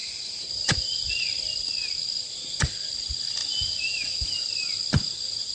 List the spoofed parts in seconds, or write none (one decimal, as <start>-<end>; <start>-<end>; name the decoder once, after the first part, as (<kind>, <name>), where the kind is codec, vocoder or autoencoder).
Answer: 0.0-1.1 (vocoder, BigVGAN v2); 3.4-4.5